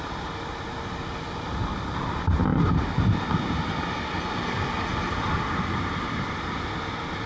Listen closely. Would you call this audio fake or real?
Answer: real